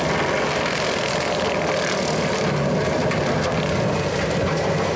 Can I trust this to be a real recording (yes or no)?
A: yes